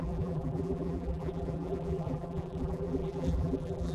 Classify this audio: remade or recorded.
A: remade